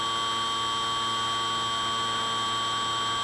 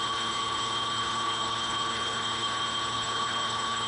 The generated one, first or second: second